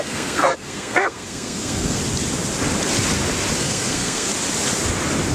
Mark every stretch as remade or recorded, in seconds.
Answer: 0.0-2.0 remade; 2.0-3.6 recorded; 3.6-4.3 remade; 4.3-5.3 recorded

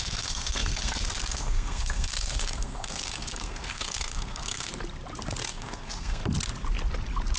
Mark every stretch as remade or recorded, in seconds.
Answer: 0.0-4.7 remade; 4.7-5.5 recorded; 5.5-6.2 remade; 6.2-7.4 recorded

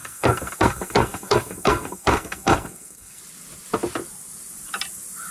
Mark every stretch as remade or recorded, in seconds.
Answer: 0.0-3.2 remade; 3.2-5.3 recorded

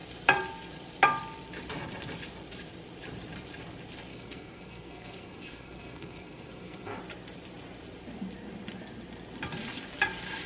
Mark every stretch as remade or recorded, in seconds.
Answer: 0.0-4.1 recorded; 4.1-7.0 remade; 7.0-10.5 recorded

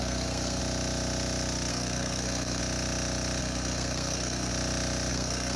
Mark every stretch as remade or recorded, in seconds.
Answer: 0.0-0.6 remade; 0.6-1.7 recorded; 1.7-2.6 remade; 2.6-3.4 recorded; 3.4-4.5 remade; 4.5-5.1 recorded; 5.1-5.6 remade

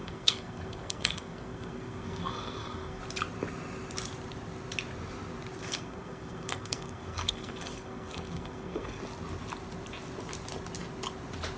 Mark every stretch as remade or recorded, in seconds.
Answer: 0.0-3.0 remade; 3.0-5.6 recorded; 5.6-9.0 remade; 9.0-11.6 recorded

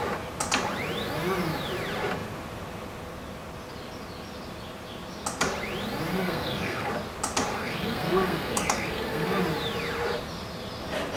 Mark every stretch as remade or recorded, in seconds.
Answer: 0.0-6.1 recorded; 6.1-6.9 remade; 6.9-7.5 recorded; 7.5-9.4 remade; 9.4-11.2 recorded

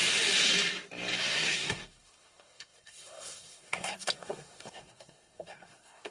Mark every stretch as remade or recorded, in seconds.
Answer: 0.0-1.2 recorded; 1.2-6.1 remade